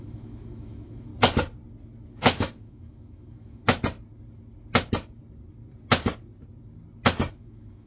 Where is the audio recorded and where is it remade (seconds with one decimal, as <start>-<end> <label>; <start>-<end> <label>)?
0.0-1.1 remade; 1.1-2.1 recorded; 2.1-3.6 remade; 3.6-7.3 recorded; 7.3-7.9 remade